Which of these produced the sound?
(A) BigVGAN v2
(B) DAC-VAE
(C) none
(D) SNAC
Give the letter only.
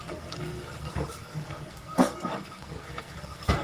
D